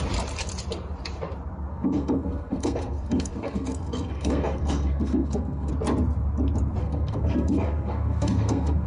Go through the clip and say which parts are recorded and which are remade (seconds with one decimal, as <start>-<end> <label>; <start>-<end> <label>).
0.0-1.7 recorded; 1.7-5.7 remade; 5.7-6.8 recorded; 6.8-8.9 remade